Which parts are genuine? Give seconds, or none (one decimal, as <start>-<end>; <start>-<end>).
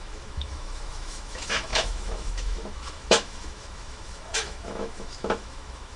none